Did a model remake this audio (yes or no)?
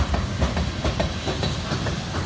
no